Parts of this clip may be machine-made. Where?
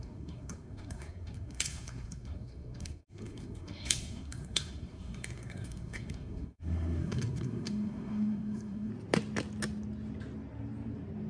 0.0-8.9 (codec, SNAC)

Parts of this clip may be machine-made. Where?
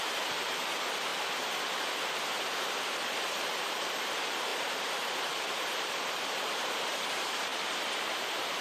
0.0-1.1 (vocoder, BigVGAN v2); 3.4-8.6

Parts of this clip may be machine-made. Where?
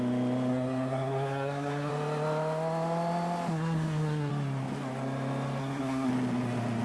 0.5-1.9 (codec, SNAC); 3.5-4.3; 5.6-6.1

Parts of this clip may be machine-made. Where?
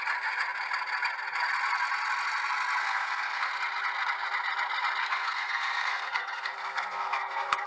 2.8-3.5 (codec, SNAC); 5.0-7.7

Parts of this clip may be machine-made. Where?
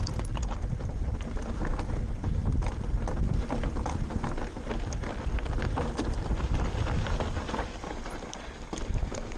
0.0-2.4 (vocoder, BigVGAN v2); 3.8-9.4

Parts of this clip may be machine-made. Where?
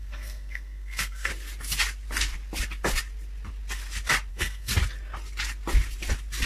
0.0-1.3 (codec, SNAC); 4.3-4.7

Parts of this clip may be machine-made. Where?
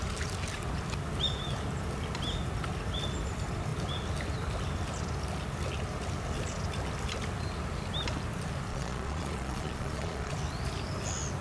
8.7-10.3 (vocoder, Vocos)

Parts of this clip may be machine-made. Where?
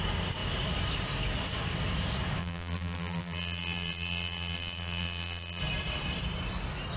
2.4-5.6 (vocoder, BigVGAN v2)